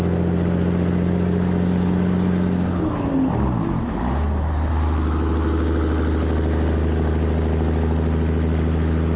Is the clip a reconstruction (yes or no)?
no